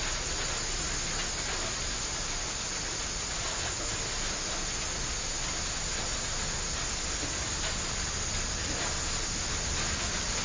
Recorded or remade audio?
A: recorded